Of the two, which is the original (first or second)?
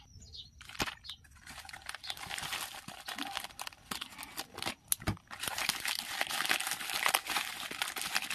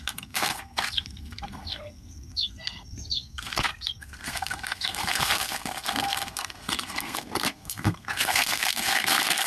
first